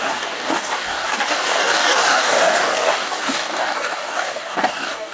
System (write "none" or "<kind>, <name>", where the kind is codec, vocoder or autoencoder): codec, DAC